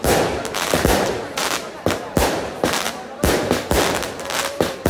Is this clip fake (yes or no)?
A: yes